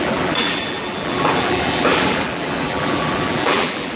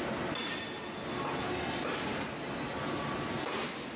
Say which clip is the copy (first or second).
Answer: first